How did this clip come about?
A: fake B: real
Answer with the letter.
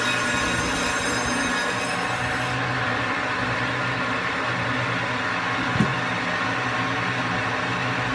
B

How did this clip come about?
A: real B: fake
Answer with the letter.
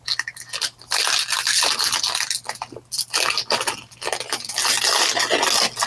A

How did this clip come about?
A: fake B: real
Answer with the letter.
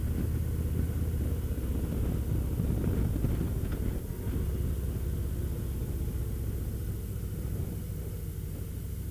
B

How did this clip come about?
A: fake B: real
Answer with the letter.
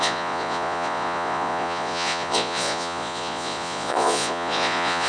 A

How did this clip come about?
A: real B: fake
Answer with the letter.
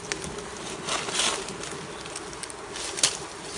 A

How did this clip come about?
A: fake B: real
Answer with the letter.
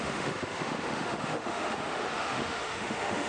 A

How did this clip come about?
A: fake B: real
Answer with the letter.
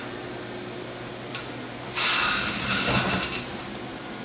B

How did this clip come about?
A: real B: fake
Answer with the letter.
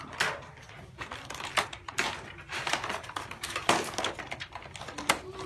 A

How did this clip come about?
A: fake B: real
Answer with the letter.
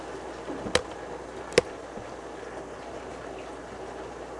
B